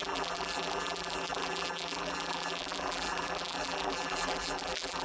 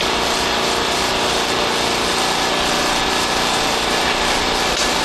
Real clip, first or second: second